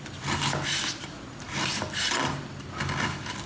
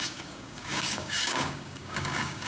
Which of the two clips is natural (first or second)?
first